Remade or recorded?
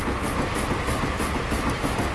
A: recorded